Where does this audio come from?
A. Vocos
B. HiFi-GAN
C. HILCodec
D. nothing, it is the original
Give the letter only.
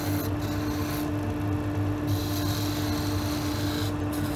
D